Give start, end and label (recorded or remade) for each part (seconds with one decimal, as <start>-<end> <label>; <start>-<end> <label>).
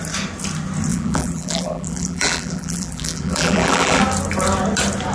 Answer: 0.0-0.9 recorded; 0.9-4.0 remade; 4.0-5.1 recorded